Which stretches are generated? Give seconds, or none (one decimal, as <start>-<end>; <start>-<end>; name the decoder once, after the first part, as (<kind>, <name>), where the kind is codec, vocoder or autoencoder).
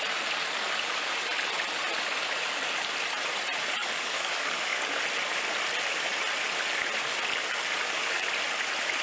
3.8-5.0 (codec, DAC)